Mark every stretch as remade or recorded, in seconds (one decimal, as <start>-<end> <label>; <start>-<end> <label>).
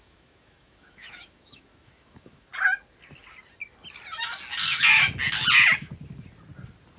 0.0-2.5 remade; 2.5-7.0 recorded